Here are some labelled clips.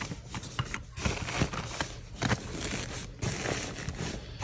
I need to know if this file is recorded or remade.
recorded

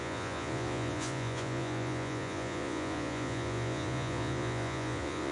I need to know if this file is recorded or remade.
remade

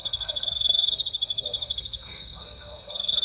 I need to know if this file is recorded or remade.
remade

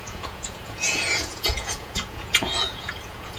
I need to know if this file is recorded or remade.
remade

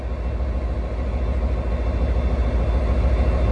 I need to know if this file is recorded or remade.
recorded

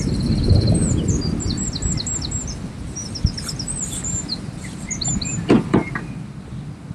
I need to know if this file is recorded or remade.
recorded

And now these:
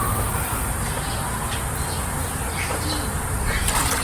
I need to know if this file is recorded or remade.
recorded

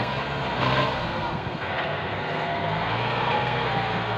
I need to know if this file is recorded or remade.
remade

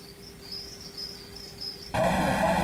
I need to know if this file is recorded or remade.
recorded